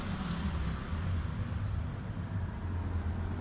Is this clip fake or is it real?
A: real